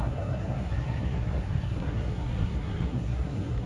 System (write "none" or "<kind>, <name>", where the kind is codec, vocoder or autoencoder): codec, SNAC